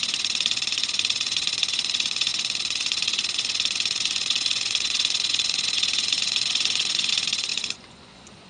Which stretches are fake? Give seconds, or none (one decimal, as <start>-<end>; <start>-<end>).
0.0-8.5